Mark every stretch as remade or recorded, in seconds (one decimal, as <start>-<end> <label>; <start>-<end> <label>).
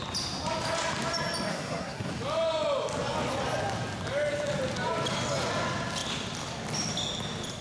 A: 0.0-1.5 recorded; 1.5-2.1 remade; 2.1-7.6 recorded